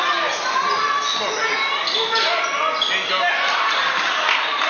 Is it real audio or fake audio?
real